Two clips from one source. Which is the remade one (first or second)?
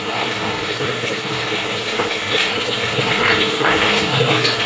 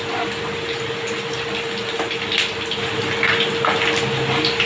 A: first